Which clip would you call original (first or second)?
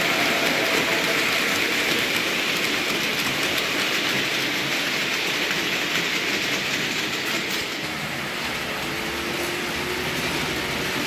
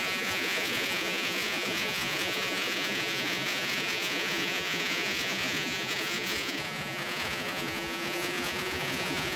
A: first